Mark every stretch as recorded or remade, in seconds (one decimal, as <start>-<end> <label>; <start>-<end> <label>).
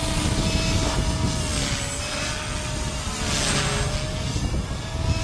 0.0-5.2 recorded